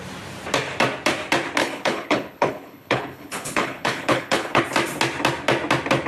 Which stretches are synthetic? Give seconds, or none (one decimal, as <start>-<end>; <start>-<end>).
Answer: 1.6-4.6